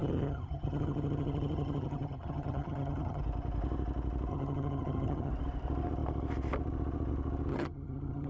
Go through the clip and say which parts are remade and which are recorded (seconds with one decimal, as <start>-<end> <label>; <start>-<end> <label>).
0.0-3.2 remade; 3.2-4.3 recorded; 4.3-5.3 remade; 5.3-7.5 recorded; 7.5-8.3 remade